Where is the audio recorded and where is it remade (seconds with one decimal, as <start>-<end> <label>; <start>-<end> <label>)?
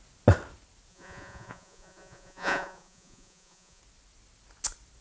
0.0-0.9 recorded; 0.9-3.8 remade; 3.8-5.0 recorded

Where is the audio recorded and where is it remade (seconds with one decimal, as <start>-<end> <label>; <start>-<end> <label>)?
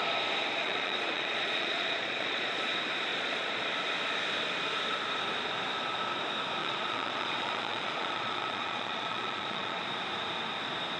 0.0-0.6 recorded; 0.6-2.7 remade; 2.7-3.1 recorded; 3.1-3.6 remade; 3.6-6.6 recorded; 6.6-9.8 remade; 9.8-11.0 recorded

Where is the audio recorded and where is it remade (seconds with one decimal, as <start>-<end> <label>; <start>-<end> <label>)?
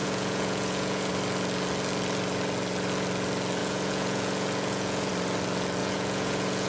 0.0-1.1 remade; 1.1-3.6 recorded; 3.6-5.1 remade; 5.1-5.8 recorded; 5.8-6.7 remade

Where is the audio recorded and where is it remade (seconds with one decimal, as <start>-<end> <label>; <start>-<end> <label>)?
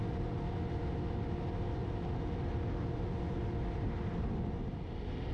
0.0-5.3 recorded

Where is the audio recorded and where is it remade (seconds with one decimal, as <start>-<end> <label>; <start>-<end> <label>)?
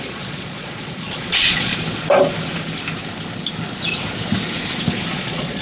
0.0-1.7 remade; 1.7-5.1 recorded; 5.1-5.6 remade